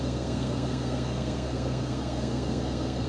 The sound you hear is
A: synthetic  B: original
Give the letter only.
A